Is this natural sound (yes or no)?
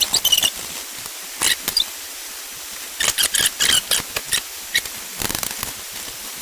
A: yes